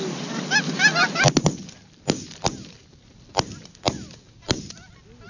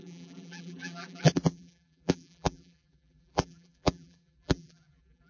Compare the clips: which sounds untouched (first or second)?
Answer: first